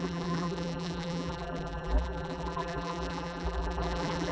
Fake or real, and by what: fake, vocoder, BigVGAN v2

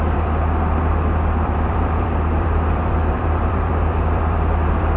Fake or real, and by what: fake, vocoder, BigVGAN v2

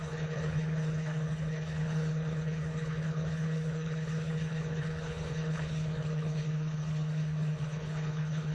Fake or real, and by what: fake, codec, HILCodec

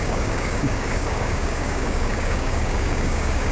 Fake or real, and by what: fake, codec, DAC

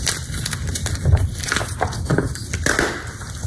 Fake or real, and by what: real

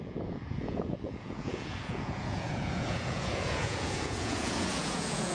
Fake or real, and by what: fake, vocoder, Vocos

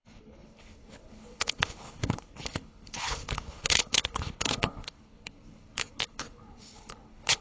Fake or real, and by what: fake, codec, HILCodec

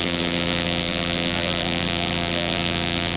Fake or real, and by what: fake, vocoder, BigVGAN v2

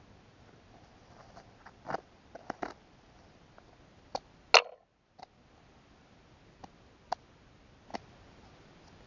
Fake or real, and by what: real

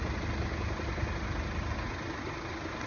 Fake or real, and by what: real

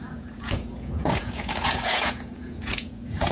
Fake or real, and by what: fake, vocoder, Vocos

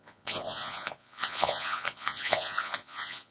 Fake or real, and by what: fake, vocoder, Vocos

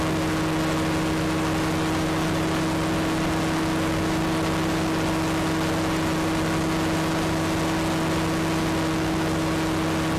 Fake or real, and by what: real